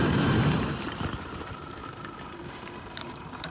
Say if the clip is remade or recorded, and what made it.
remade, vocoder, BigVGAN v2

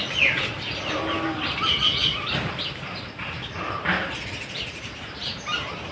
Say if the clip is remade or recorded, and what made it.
recorded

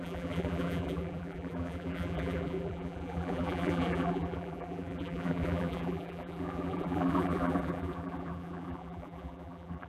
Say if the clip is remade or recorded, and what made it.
remade, vocoder, BigVGAN v2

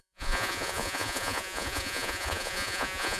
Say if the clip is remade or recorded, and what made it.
remade, vocoder, Vocos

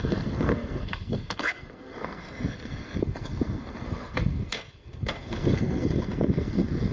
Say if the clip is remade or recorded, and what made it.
remade, codec, SNAC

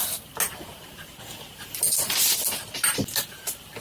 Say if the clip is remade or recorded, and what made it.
recorded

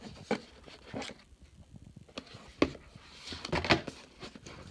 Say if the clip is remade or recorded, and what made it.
recorded